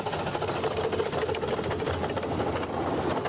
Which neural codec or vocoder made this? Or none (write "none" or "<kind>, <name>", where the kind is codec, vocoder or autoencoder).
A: none